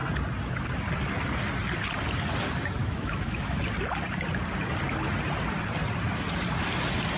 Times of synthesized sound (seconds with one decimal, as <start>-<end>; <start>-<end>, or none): 2.8-3.6